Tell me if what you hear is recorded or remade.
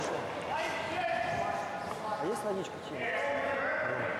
recorded